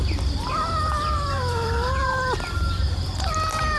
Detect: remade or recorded recorded